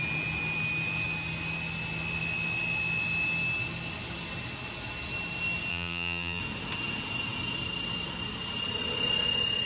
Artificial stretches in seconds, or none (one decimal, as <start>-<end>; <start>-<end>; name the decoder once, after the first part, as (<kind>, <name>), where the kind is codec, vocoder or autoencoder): 5.7-6.4 (vocoder, BigVGAN v2)